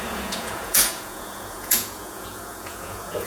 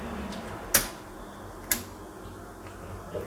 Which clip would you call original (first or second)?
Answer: second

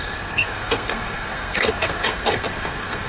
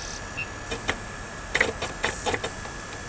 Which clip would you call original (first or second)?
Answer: second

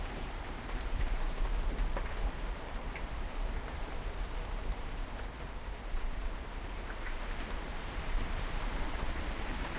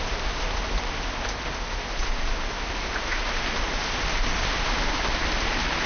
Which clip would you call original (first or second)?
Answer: second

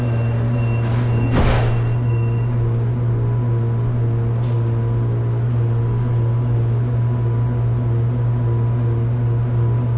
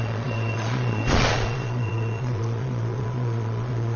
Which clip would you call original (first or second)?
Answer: first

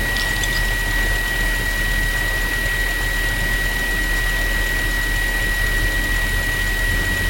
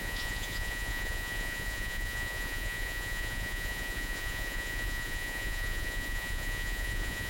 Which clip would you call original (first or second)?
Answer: first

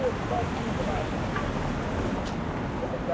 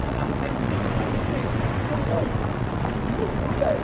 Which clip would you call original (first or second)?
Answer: first